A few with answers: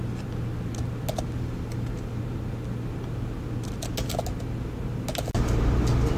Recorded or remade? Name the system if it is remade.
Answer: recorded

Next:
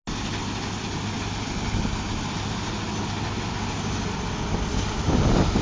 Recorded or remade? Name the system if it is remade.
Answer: recorded